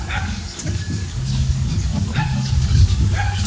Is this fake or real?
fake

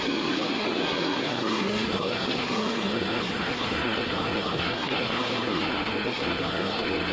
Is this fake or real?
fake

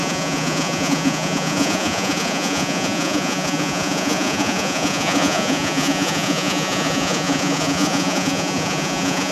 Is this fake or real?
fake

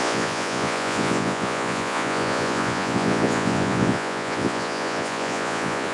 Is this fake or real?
fake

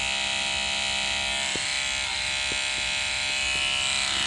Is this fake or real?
real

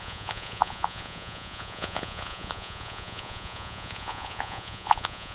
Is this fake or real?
fake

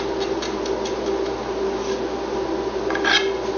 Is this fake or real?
real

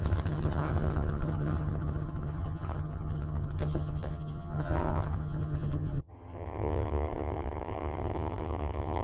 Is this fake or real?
fake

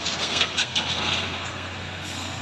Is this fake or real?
fake